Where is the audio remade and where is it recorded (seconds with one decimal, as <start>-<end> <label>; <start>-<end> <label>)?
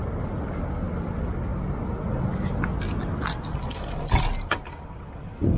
0.0-5.6 recorded